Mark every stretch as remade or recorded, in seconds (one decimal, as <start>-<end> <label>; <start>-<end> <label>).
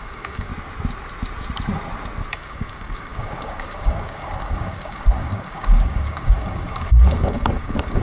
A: 0.0-0.5 remade; 0.5-2.3 recorded; 2.3-8.0 remade